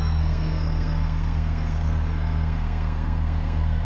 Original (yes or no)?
no